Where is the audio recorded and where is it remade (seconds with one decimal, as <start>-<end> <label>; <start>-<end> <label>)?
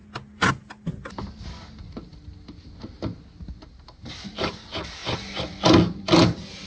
0.0-6.7 recorded